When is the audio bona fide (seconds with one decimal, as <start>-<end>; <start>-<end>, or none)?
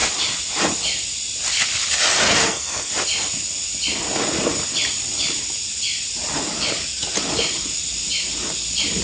0.0-2.4; 2.9-9.0